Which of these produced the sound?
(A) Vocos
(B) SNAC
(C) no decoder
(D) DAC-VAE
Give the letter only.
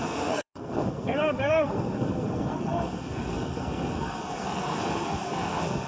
B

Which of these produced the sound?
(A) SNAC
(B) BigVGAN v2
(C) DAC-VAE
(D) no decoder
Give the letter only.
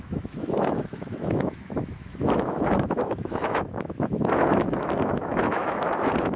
C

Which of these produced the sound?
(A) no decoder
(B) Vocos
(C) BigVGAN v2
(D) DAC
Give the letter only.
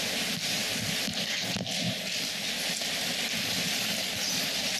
A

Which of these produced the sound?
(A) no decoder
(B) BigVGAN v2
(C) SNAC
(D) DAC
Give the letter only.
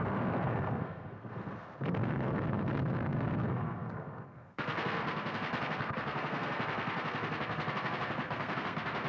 C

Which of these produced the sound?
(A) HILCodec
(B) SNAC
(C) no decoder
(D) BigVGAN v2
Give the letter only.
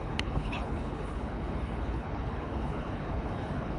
A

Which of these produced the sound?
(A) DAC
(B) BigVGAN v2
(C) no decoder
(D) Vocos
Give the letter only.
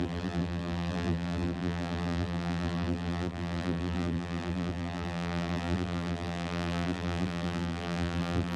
B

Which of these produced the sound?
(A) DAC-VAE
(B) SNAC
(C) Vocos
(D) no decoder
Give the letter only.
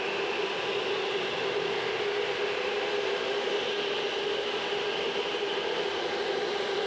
D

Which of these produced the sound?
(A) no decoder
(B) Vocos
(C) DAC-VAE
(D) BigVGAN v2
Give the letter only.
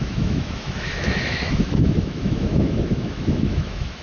C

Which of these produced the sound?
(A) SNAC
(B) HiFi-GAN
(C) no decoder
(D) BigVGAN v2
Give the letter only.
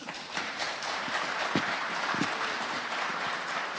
D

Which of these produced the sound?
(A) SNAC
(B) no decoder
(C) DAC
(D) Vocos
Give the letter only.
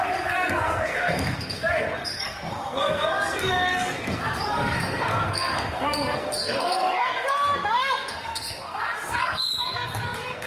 A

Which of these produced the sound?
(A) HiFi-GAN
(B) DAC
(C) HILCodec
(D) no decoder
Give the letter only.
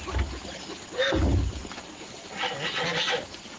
D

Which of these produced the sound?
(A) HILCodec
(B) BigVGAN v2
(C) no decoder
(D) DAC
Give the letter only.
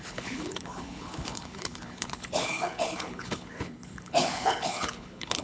A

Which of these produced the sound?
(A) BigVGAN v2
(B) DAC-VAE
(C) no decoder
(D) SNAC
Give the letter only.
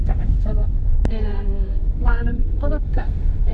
D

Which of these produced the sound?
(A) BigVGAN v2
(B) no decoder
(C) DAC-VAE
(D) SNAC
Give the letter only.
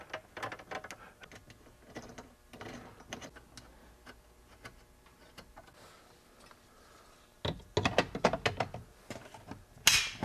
B